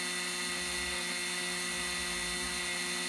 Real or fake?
real